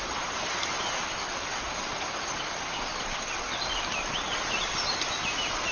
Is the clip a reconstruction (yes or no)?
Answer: no